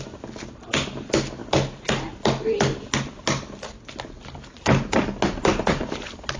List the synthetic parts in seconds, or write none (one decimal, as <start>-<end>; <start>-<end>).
none